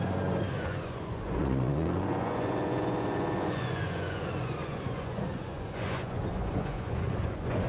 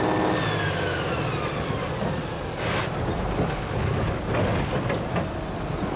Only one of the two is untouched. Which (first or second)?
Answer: second